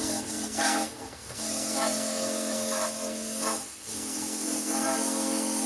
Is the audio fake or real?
fake